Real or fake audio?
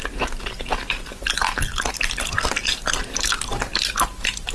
real